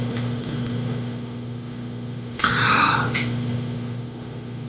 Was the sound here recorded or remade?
remade